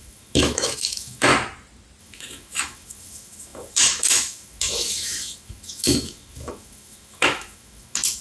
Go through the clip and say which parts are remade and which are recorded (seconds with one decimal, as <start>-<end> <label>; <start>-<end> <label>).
0.0-1.3 remade; 1.3-2.0 recorded; 2.0-8.2 remade